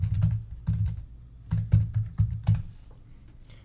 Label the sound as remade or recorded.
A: recorded